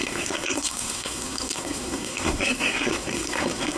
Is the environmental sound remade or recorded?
remade